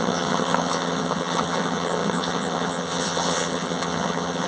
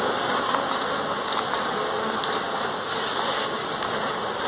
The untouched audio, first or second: second